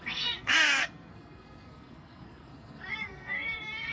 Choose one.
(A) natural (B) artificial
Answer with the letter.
B